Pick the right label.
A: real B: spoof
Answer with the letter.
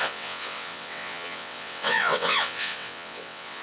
B